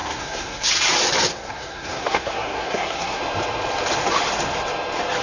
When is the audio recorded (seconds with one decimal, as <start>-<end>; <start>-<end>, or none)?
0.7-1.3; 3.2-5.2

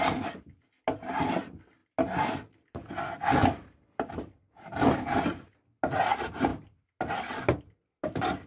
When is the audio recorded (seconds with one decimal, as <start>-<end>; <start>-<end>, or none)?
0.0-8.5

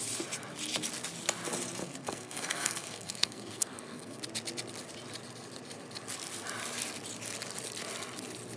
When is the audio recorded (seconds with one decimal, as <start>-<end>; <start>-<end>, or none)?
0.0-1.8; 4.2-8.6

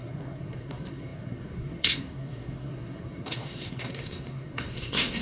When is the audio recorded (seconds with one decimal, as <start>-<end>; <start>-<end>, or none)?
none